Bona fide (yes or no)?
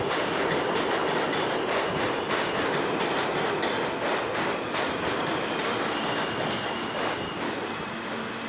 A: yes